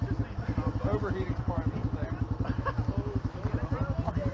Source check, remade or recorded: recorded